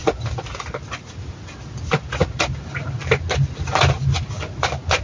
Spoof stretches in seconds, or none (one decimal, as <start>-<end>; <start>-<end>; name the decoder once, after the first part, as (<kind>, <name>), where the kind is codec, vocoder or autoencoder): none